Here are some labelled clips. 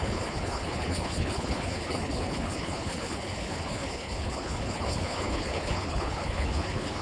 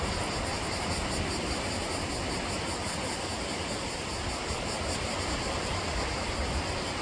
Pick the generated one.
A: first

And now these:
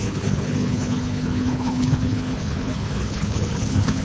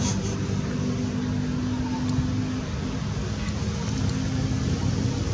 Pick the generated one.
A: first